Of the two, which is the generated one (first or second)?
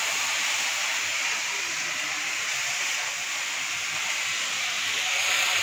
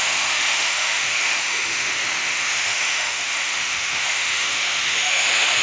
second